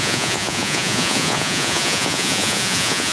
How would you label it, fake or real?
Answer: fake